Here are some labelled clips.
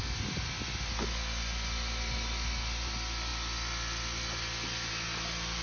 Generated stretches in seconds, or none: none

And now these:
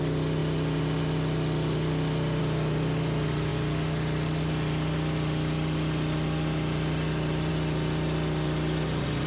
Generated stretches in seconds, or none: none

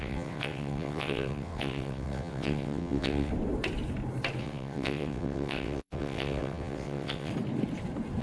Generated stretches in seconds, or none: 0.0-3.3 (vocoder, WaveNeXt); 4.4-7.3

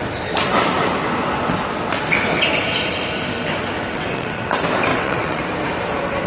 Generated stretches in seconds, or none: 3.9-4.5 (vocoder, WaveNeXt); 4.9-5.4

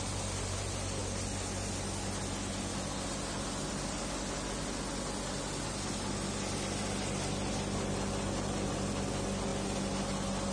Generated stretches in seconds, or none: none

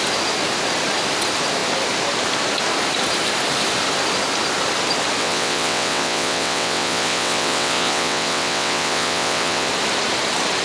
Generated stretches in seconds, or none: 5.2-9.7 (vocoder, WaveNeXt)

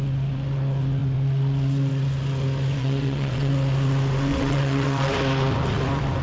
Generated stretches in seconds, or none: 2.8-3.5 (vocoder, WaveNeXt); 4.3-5.1